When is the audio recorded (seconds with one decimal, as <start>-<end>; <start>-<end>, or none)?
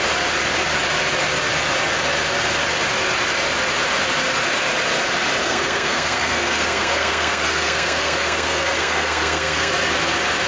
0.0-5.4; 9.7-10.5